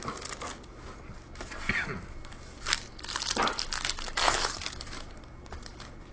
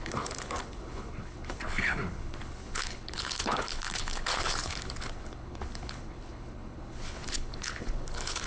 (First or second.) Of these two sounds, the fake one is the second